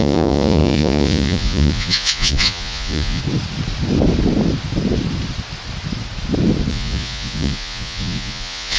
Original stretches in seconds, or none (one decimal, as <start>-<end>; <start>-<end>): 3.2-6.7